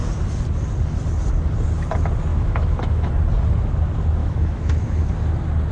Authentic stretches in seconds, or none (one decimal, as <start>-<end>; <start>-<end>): 0.0-2.3; 3.1-4.2; 5.0-5.7